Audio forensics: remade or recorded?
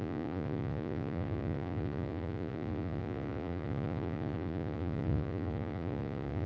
remade